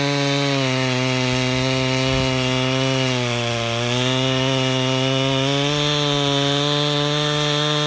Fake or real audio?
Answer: real